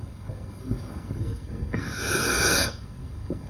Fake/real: fake